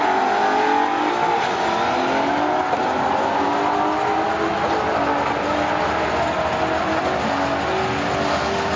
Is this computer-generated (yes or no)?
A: no